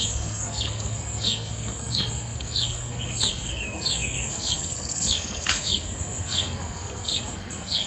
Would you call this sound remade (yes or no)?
yes